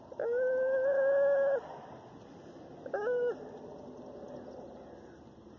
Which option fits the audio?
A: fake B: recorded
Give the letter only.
B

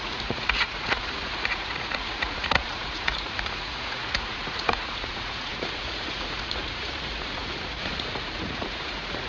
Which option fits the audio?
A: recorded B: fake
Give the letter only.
B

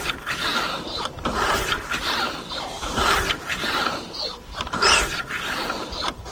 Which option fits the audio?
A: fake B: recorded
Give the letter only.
A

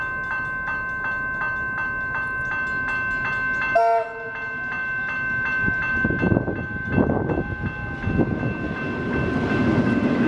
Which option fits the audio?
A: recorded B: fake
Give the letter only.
A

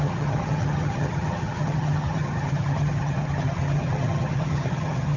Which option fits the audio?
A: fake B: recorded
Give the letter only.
A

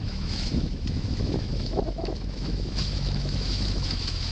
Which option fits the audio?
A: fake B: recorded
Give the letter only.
A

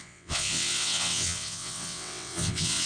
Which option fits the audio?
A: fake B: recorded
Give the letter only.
A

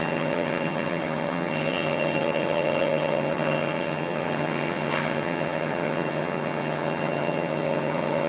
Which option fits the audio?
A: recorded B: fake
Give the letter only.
B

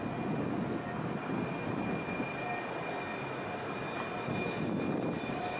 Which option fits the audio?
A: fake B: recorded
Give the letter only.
B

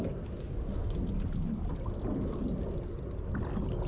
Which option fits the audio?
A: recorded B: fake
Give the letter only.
A